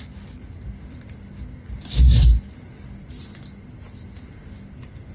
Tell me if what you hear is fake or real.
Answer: real